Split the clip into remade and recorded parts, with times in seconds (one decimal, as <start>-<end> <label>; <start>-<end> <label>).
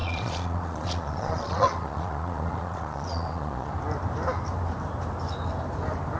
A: 0.0-3.7 remade; 3.7-6.2 recorded